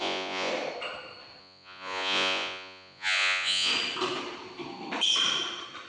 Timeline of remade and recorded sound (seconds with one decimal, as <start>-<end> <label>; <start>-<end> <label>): 0.0-0.5 remade; 0.5-1.4 recorded; 1.4-3.7 remade; 3.7-5.9 recorded